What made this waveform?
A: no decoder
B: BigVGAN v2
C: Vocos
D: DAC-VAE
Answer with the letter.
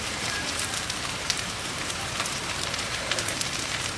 B